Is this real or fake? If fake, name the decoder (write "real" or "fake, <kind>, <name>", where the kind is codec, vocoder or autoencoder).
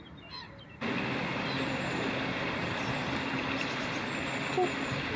real